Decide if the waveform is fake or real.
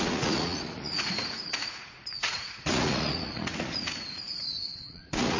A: fake